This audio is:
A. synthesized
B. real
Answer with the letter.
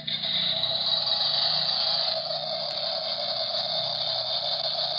B